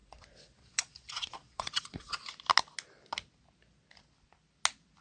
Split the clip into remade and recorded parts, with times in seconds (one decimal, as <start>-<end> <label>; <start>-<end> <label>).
0.0-2.3 remade; 2.3-5.0 recorded